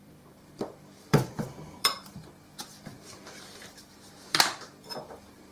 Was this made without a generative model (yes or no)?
no